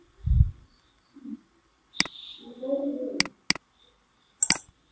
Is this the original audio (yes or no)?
yes